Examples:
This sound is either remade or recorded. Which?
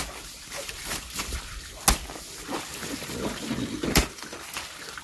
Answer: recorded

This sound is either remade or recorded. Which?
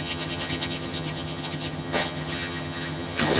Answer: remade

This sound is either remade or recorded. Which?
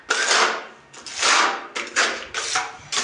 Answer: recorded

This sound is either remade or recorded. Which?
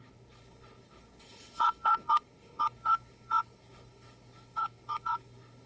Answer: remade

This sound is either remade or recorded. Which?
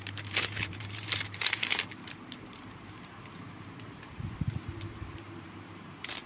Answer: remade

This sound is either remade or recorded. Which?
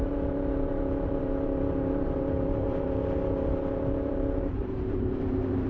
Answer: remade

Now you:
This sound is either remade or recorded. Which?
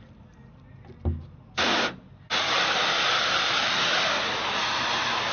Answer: recorded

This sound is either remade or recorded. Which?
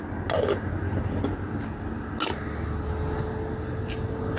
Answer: recorded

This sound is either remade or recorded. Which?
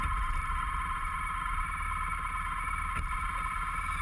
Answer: recorded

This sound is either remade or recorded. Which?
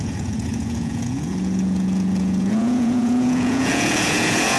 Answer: remade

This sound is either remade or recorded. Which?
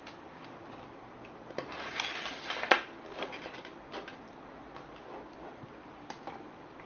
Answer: recorded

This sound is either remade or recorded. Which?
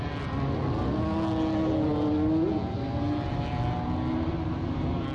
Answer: recorded